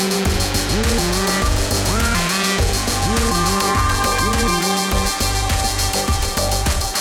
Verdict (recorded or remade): remade